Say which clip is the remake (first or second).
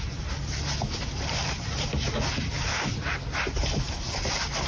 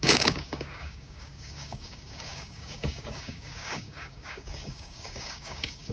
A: second